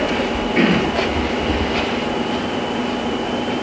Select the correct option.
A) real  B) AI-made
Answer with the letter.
A